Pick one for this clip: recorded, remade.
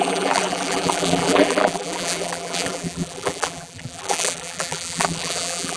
remade